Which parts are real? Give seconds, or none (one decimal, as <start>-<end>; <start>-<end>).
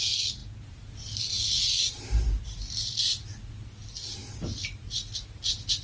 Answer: 0.0-5.8